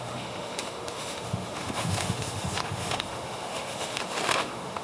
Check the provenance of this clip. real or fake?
fake